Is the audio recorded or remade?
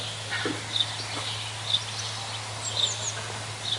recorded